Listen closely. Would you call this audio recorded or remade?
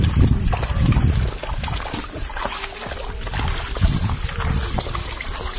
recorded